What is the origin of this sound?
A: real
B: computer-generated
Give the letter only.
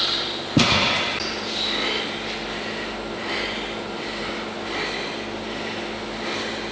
A